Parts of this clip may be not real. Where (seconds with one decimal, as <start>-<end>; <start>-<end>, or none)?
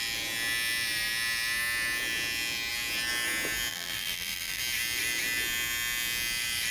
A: 3.7-4.6